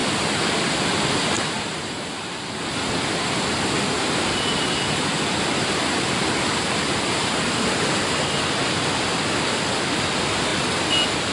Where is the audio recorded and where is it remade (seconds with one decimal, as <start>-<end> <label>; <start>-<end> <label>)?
0.0-2.4 remade; 2.4-11.3 recorded